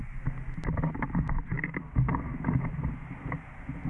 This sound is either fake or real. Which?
real